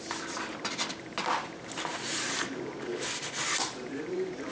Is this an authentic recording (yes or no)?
yes